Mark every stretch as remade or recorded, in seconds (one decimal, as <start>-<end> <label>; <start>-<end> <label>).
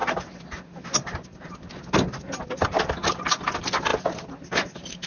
0.0-5.1 recorded